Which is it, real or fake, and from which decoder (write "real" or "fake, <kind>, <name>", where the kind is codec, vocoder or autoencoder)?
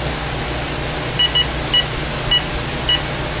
real